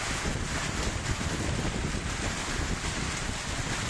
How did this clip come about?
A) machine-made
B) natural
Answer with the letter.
A